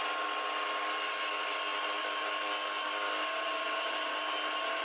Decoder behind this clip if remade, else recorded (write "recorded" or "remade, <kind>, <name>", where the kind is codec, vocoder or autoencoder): recorded